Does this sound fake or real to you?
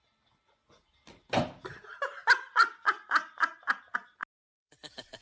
real